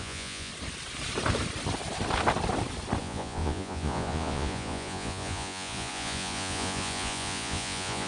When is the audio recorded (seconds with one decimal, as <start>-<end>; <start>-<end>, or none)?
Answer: 0.5-3.0